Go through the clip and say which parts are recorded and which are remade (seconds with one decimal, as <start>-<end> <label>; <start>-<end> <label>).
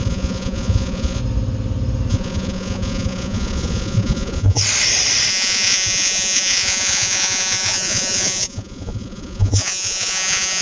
0.0-1.2 remade; 1.2-2.1 recorded; 2.1-4.6 remade; 4.6-5.3 recorded; 5.3-10.6 remade